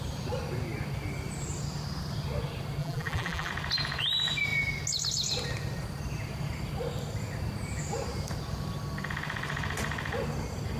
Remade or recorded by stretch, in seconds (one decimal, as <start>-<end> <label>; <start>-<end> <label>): 0.0-2.8 recorded; 2.8-3.5 remade; 3.5-10.8 recorded